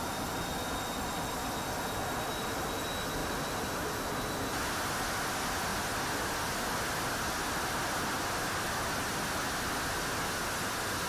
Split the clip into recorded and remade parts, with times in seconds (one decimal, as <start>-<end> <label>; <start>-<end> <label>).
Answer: 0.0-2.3 recorded; 2.3-2.8 remade; 2.8-3.2 recorded; 3.2-4.0 remade; 4.0-11.1 recorded